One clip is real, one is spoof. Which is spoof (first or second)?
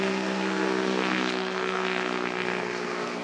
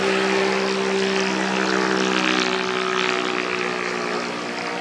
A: first